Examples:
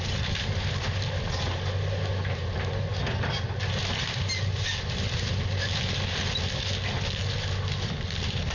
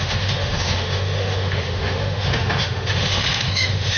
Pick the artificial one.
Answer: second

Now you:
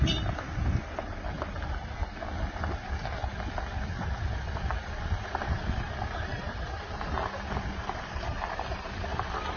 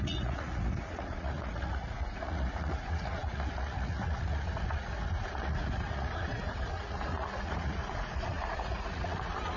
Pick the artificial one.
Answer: second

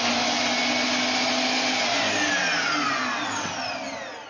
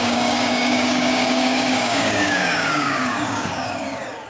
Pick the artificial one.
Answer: second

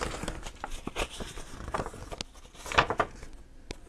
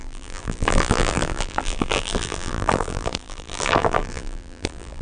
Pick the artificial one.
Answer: second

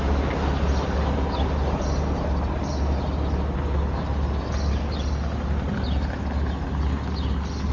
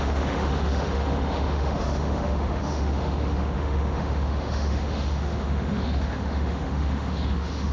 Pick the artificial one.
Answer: second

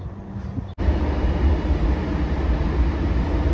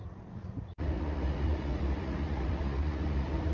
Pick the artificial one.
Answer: second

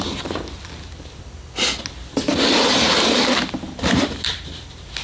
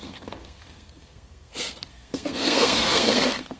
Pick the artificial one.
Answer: second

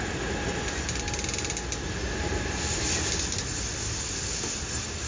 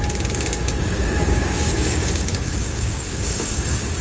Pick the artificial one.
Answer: second